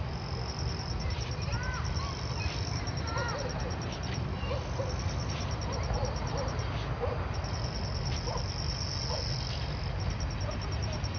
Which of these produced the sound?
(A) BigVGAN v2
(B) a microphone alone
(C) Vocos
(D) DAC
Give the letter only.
B